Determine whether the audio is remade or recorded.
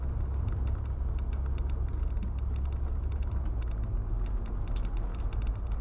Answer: recorded